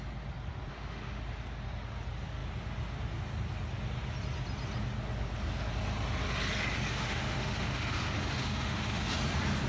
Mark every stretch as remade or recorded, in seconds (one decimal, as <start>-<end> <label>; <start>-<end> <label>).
0.0-0.7 recorded; 0.7-1.2 remade; 1.2-6.9 recorded; 6.9-9.1 remade; 9.1-9.7 recorded

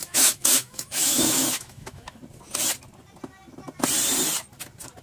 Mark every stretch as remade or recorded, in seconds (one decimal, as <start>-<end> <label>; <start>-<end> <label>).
0.0-2.2 remade; 2.2-5.0 recorded

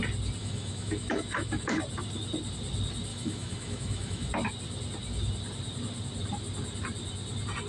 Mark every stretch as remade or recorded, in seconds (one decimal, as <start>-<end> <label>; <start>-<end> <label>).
0.0-0.4 recorded; 0.4-1.8 remade; 1.8-3.1 recorded; 3.1-4.3 remade; 4.3-7.7 recorded

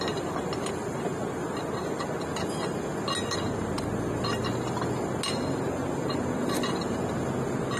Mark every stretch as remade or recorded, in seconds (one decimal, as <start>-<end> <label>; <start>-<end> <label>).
0.0-7.8 recorded

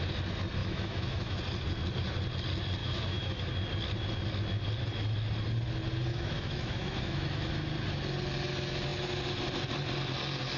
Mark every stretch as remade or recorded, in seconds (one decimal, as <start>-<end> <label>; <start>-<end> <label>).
0.0-0.6 recorded; 0.6-1.4 remade; 1.4-2.8 recorded; 2.8-3.5 remade; 3.5-6.1 recorded; 6.1-7.5 remade; 7.5-10.6 recorded

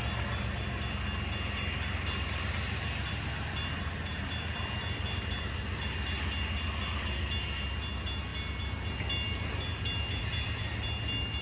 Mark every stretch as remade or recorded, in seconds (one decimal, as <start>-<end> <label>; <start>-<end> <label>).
0.0-11.4 recorded

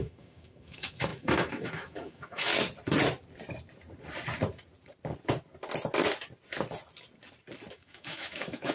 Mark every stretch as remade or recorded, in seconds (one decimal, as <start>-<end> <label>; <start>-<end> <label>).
0.0-2.5 remade; 2.5-7.7 recorded; 7.7-8.7 remade

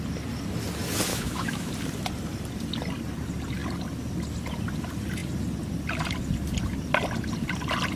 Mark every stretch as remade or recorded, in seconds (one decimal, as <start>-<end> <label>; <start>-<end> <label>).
0.0-1.1 recorded; 1.1-1.7 remade; 1.7-8.0 recorded